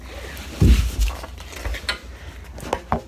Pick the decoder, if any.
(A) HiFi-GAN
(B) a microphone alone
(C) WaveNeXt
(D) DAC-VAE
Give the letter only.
B